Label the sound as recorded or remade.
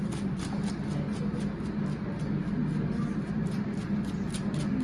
recorded